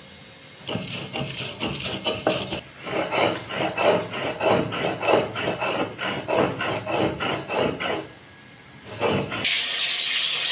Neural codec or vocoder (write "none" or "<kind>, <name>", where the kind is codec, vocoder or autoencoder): none